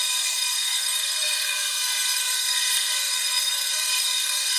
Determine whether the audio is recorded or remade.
remade